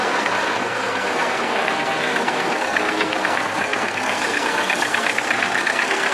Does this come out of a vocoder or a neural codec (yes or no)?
yes